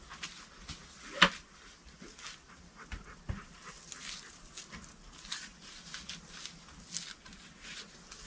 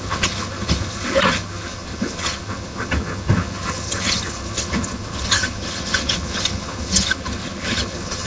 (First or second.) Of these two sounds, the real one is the first